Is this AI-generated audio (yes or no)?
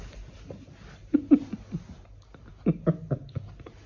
no